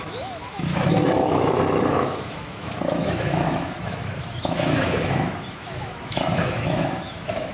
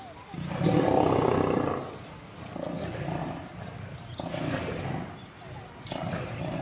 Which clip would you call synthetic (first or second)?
first